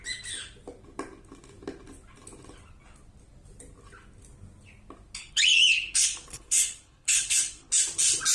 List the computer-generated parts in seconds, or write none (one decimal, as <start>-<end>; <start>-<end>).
5.2-7.7